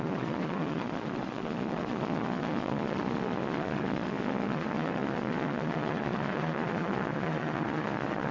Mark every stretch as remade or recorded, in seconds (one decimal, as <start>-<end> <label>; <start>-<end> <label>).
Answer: 0.0-8.3 remade